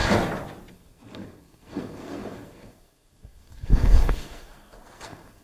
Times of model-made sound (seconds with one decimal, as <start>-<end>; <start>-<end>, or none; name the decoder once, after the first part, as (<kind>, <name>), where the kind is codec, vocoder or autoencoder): 0.7-5.4 (codec, SNAC)

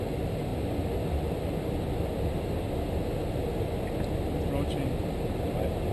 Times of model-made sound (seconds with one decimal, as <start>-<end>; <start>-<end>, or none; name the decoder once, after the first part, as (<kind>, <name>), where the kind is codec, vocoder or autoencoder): none

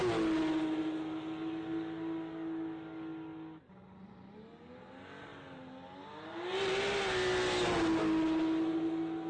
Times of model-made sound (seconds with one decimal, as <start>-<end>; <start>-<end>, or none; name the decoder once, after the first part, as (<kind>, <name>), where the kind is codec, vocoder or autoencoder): none